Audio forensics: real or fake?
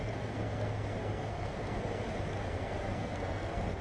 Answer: fake